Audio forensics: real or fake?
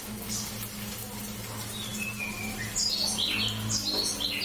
real